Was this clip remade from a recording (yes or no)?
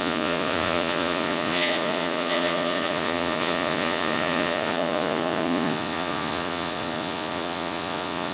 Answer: yes